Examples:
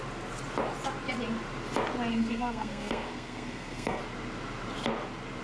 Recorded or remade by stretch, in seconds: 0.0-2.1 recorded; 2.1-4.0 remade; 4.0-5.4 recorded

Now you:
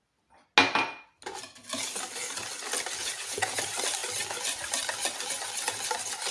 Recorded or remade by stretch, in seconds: 0.0-3.0 recorded; 3.0-3.6 remade; 3.6-6.3 recorded

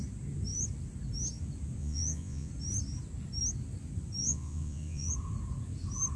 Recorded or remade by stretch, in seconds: 0.0-1.8 recorded; 1.8-2.5 remade; 2.5-4.2 recorded; 4.2-5.1 remade; 5.1-6.2 recorded

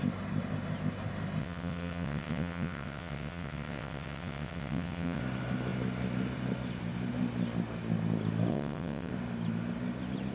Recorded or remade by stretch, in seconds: 0.0-1.4 recorded; 1.4-5.2 remade; 5.2-8.5 recorded; 8.5-9.1 remade; 9.1-10.3 recorded

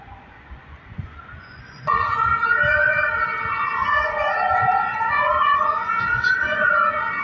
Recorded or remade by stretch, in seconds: 0.0-2.3 remade; 2.3-3.5 recorded; 3.5-7.2 remade

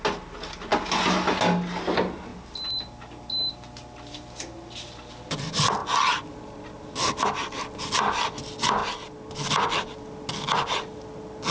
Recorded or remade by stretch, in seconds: 0.0-11.5 recorded